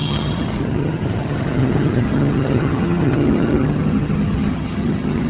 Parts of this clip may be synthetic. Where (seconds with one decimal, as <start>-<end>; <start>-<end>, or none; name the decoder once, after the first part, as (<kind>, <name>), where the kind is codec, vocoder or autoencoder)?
0.0-5.3 (vocoder, HiFi-GAN)